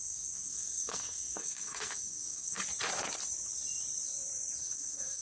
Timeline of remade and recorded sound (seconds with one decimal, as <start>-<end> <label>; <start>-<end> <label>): 0.0-2.6 remade; 2.6-4.6 recorded; 4.6-5.2 remade